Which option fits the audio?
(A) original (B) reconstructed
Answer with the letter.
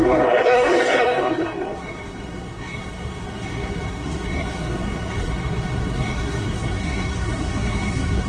B